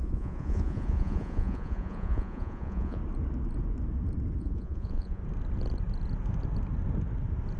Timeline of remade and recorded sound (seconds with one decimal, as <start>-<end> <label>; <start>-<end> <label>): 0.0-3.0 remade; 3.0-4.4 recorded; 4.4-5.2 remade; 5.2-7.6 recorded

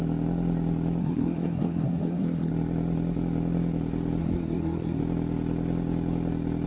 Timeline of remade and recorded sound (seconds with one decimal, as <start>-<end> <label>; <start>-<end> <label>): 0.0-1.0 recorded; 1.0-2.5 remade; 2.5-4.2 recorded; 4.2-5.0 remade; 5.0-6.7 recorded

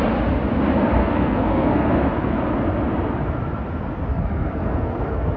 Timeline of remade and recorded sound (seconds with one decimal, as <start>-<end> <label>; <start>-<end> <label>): 0.0-1.0 recorded; 1.0-1.9 remade; 1.9-4.1 recorded; 4.1-5.4 remade

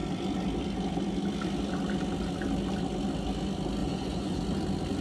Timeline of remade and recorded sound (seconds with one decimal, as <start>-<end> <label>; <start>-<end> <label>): 0.0-3.8 recorded; 3.8-4.4 remade; 4.4-5.0 recorded

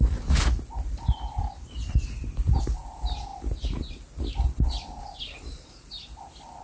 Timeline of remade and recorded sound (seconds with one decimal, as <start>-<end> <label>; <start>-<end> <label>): 0.0-6.6 recorded

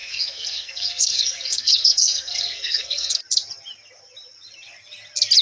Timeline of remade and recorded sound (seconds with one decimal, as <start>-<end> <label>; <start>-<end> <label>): 0.0-3.2 remade; 3.2-5.4 recorded

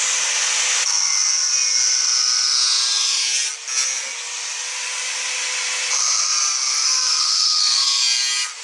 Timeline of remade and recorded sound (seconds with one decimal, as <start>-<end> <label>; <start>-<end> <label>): 0.0-6.7 recorded; 6.7-7.8 remade; 7.8-8.6 recorded